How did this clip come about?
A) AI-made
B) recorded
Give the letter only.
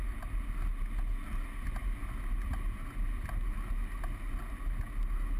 B